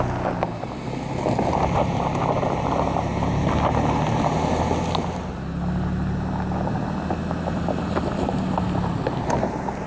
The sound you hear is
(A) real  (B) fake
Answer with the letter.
A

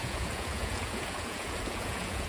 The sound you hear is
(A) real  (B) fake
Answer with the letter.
B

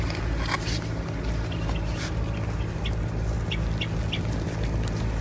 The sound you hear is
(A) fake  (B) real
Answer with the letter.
B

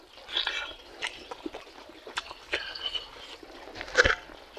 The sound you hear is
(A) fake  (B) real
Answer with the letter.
B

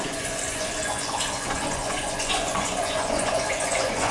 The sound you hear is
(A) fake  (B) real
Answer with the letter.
A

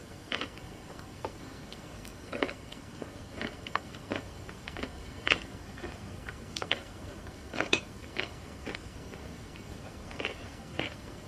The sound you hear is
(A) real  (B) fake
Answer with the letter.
B